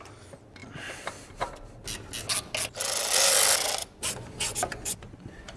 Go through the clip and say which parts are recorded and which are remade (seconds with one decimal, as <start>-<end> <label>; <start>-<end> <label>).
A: 0.0-3.8 recorded; 3.8-5.6 remade